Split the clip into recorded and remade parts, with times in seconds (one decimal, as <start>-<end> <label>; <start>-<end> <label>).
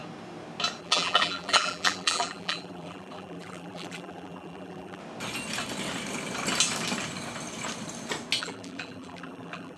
0.0-0.8 recorded; 0.8-5.0 remade; 5.0-8.4 recorded; 8.4-9.8 remade